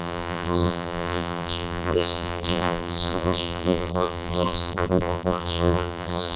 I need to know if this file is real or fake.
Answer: fake